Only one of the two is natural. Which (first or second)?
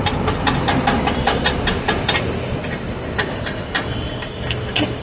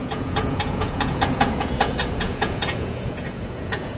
first